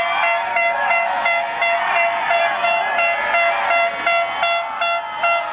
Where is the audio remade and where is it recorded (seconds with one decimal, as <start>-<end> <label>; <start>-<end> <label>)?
0.0-5.5 recorded

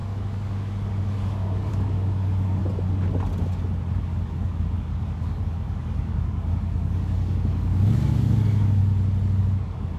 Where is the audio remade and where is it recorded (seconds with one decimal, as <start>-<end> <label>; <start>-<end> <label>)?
0.0-2.6 remade; 2.6-4.0 recorded; 4.0-8.8 remade; 8.8-9.4 recorded; 9.4-10.0 remade

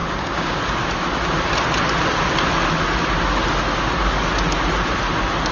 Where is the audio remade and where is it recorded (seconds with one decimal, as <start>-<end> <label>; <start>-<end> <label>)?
0.0-0.6 remade; 0.6-5.5 recorded

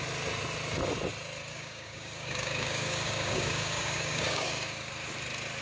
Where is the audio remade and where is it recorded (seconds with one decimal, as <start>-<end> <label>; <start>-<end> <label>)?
0.0-1.5 recorded; 1.5-4.9 remade; 4.9-5.6 recorded